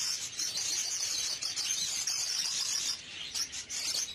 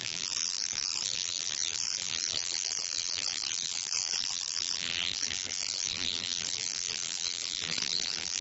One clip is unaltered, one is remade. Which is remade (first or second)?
second